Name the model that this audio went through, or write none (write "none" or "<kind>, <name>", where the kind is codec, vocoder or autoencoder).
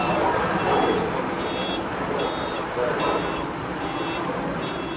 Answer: vocoder, BigVGAN v2